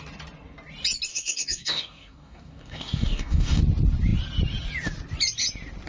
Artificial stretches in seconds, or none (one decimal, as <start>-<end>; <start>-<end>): 1.1-3.6